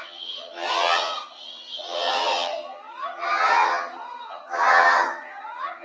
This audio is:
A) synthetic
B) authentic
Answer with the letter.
A